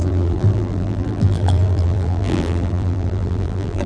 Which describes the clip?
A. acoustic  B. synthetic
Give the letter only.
B